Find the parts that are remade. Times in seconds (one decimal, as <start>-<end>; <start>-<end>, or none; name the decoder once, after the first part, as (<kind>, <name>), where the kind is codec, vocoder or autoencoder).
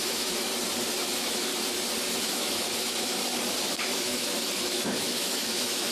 0.0-0.5 (autoencoder, DAC-VAE); 1.0-1.5; 2.2-3.2; 3.8-5.9